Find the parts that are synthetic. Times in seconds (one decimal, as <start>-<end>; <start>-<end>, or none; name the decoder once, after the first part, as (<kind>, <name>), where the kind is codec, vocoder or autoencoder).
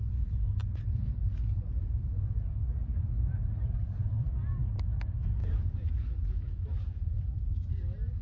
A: 0.6-2.5 (vocoder, BigVGAN v2); 2.9-4.7; 5.4-7.7